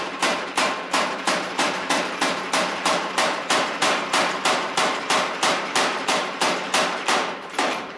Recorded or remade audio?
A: remade